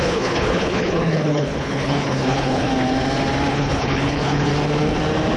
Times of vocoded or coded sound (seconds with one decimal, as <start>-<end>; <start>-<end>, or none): 0.0-2.7; 3.5-4.5